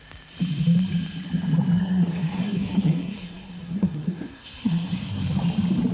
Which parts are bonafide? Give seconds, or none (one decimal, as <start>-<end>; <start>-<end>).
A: 0.0-1.8; 5.2-5.9